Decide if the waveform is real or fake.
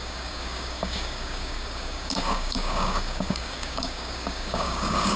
fake